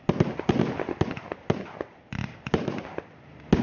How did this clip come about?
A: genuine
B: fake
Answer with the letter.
A